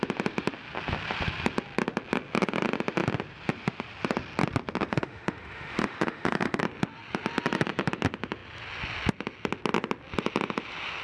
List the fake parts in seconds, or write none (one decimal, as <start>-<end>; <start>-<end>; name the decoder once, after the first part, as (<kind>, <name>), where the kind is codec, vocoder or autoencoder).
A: 4.9-6.6 (autoencoder, DAC-VAE)